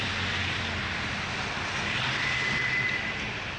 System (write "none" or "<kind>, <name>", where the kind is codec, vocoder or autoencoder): none